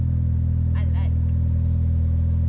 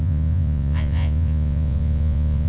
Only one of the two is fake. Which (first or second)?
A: second